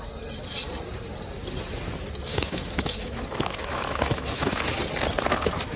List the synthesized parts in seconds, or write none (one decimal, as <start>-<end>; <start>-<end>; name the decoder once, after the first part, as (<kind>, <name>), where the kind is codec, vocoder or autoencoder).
2.3-4.6 (autoencoder, DAC-VAE)